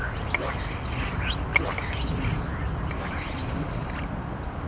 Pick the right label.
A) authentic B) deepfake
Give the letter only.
A